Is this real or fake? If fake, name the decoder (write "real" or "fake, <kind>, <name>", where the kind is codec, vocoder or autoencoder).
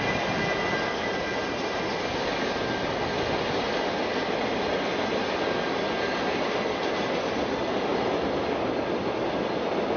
real